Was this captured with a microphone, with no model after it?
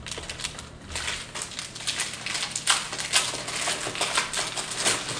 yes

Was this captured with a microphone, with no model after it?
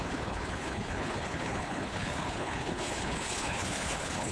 no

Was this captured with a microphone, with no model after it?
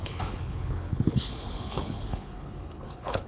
no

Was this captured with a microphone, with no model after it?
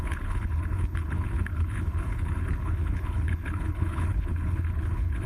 no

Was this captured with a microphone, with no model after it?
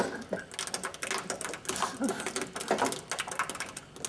yes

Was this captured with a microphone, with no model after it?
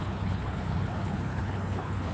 no